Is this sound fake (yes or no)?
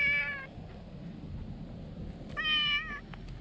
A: no